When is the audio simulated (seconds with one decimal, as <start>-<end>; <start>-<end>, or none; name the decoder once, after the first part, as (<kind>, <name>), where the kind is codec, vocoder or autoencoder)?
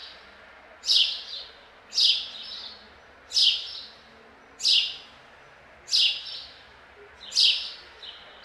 none